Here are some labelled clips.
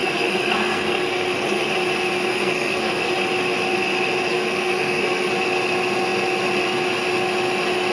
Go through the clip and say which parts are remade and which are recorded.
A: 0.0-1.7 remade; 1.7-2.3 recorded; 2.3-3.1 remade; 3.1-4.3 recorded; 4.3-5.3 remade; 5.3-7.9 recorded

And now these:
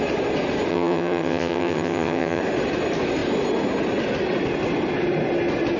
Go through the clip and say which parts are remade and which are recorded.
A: 0.0-0.7 recorded; 0.7-2.4 remade; 2.4-5.8 recorded

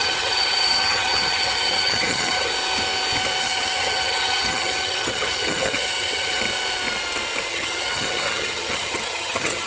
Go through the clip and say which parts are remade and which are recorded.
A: 0.0-2.5 remade; 2.5-3.4 recorded; 3.4-6.4 remade; 6.4-7.5 recorded; 7.5-9.7 remade

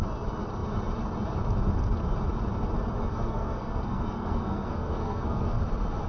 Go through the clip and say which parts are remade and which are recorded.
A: 0.0-3.1 recorded; 3.1-5.6 remade; 5.6-6.1 recorded

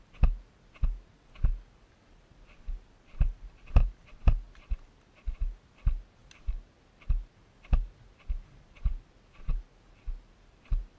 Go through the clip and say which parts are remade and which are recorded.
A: 0.0-11.0 recorded